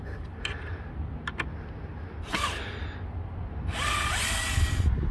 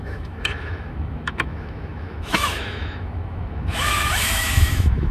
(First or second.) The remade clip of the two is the second